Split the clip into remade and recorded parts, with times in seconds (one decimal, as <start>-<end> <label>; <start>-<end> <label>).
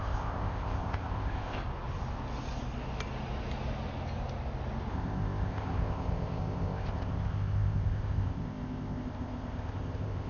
0.0-1.6 remade; 1.6-4.9 recorded; 4.9-10.3 remade